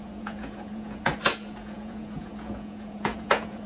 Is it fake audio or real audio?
fake